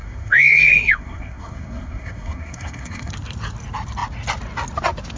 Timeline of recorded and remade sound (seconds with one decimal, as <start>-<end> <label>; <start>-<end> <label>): 0.0-3.1 remade; 3.1-5.2 recorded